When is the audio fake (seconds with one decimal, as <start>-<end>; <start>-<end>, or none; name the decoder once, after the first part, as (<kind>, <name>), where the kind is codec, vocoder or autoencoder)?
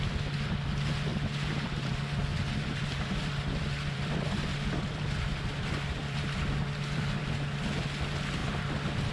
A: 1.1-1.9 (vocoder, BigVGAN v2); 2.3-7.2